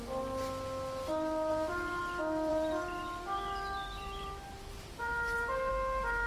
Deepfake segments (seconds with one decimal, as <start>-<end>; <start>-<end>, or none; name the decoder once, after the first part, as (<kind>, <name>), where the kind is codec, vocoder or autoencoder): 1.5-2.0 (vocoder, BigVGAN v2); 2.5-5.7